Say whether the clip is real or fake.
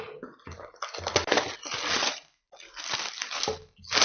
real